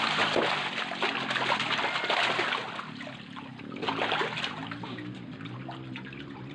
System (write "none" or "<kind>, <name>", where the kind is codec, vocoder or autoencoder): none